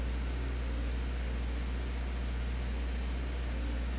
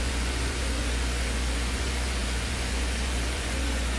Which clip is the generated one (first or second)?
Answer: second